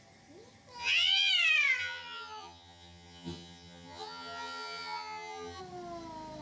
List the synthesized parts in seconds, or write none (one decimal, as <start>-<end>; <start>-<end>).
0.8-1.3; 1.8-5.6